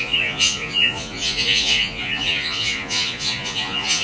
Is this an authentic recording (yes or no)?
no